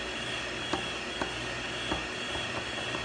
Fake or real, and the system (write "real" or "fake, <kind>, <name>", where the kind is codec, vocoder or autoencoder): real